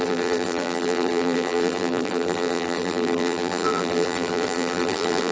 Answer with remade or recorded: remade